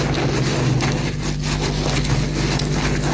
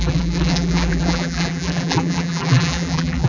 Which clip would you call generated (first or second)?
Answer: second